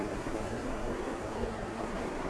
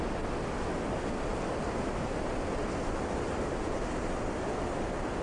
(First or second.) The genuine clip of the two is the second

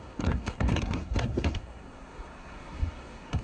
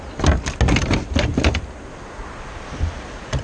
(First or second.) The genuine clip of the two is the second